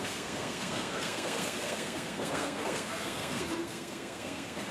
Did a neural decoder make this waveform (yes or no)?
yes